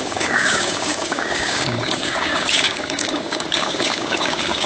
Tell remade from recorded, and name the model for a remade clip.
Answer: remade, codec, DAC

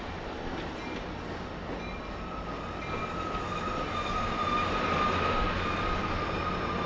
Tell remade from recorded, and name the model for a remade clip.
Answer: recorded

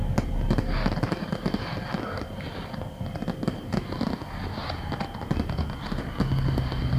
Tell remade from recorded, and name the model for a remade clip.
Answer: recorded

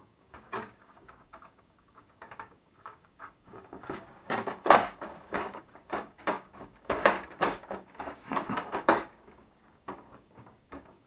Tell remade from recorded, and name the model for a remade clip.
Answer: remade, codec, DAC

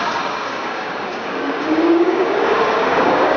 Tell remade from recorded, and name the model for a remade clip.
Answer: remade, codec, DAC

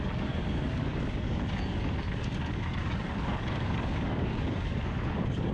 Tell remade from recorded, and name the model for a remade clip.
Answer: remade, codec, DAC